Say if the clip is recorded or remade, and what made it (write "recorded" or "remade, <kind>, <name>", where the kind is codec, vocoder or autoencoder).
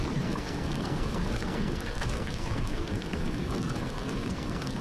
remade, codec, SNAC